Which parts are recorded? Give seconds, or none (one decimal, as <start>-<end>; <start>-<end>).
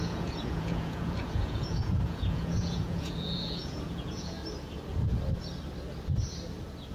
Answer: 4.4-6.9